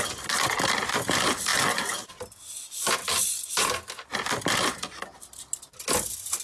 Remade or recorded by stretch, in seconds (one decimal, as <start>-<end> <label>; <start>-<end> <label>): 0.0-6.4 recorded

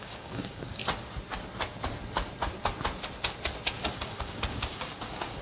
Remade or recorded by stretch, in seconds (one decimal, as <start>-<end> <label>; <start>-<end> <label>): 0.0-0.8 remade; 0.8-4.0 recorded; 4.0-5.4 remade

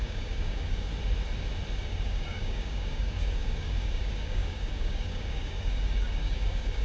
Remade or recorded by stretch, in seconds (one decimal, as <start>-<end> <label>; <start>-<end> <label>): 0.0-0.9 remade; 0.9-1.7 recorded; 1.7-6.8 remade

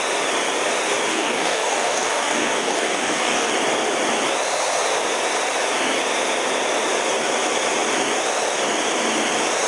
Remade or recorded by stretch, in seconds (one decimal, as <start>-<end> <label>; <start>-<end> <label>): 0.0-1.1 recorded; 1.1-3.5 remade; 3.5-9.7 recorded

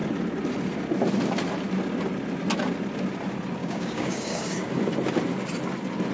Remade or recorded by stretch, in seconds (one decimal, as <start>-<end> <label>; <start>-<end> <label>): 0.0-3.6 recorded; 3.6-4.7 remade; 4.7-6.1 recorded

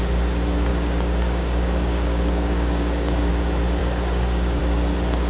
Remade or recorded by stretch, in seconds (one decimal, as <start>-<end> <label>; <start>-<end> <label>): 0.0-0.7 recorded; 0.7-3.3 remade; 3.3-3.8 recorded; 3.8-4.6 remade; 4.6-5.3 recorded

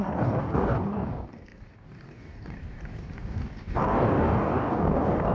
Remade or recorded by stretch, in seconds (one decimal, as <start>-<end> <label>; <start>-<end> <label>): 0.0-5.3 remade

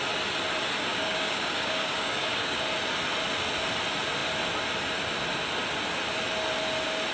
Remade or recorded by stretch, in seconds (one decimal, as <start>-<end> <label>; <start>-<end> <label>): 0.0-0.9 recorded; 0.9-2.6 remade; 2.6-7.1 recorded